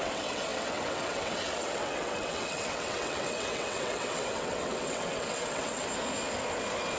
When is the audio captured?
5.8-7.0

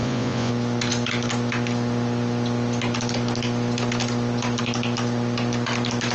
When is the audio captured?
0.5-6.1

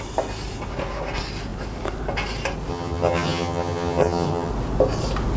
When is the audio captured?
0.0-2.7; 4.5-5.4

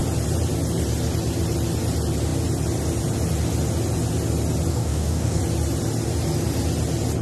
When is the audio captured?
0.0-4.7; 5.4-7.2

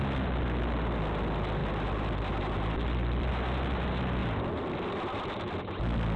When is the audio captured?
0.0-1.6; 3.3-4.2; 5.4-6.2

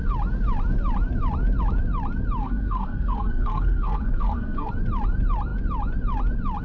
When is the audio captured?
0.0-2.4; 4.7-6.6

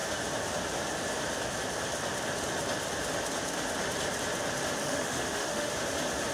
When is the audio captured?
0.0-4.8; 5.7-6.3

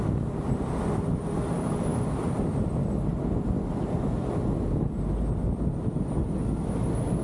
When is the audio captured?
0.0-7.2